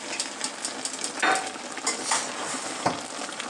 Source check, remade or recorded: recorded